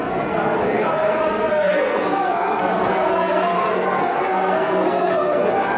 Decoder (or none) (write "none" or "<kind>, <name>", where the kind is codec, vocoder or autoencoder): codec, SNAC